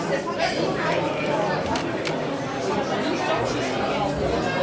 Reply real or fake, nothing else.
real